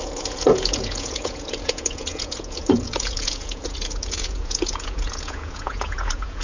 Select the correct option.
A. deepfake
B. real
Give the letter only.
A